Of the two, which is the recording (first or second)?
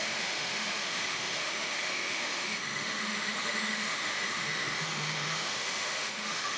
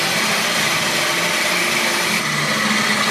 second